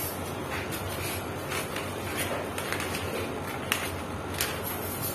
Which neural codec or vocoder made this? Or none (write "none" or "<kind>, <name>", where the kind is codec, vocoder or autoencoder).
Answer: none